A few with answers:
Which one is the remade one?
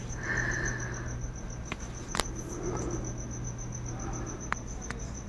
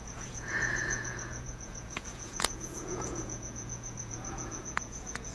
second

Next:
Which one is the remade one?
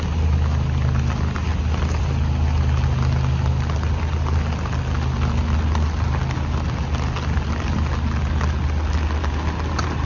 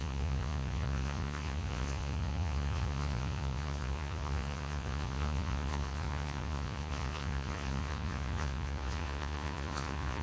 second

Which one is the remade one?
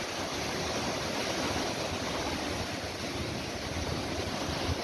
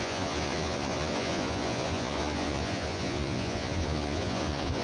second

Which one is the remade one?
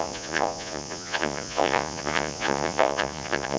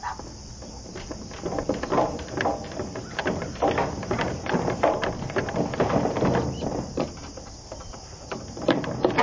first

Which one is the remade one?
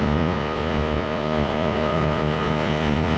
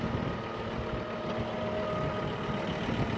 first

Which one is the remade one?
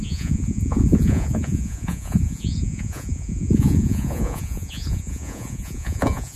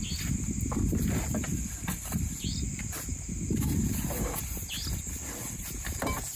first